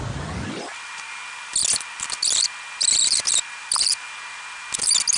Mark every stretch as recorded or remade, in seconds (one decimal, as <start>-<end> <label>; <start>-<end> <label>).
0.0-5.2 recorded

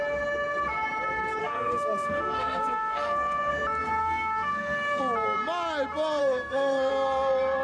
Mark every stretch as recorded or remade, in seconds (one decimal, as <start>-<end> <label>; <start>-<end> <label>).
0.0-1.4 recorded; 1.4-3.5 remade; 3.5-4.0 recorded; 4.0-5.0 remade; 5.0-6.2 recorded; 6.2-6.9 remade; 6.9-7.6 recorded

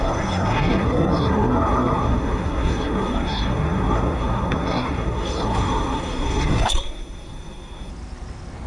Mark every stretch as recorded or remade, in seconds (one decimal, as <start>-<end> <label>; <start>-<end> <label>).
0.0-7.9 remade; 7.9-8.7 recorded

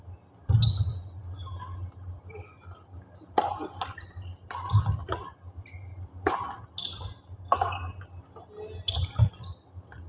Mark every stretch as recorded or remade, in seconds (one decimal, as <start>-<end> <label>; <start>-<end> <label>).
0.0-10.1 recorded

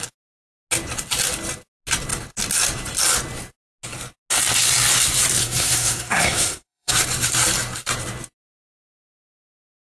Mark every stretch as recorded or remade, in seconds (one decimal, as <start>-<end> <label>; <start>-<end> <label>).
0.0-5.4 recorded; 5.4-6.9 remade; 6.9-9.9 recorded